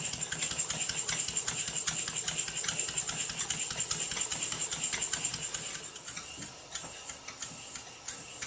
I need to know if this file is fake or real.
real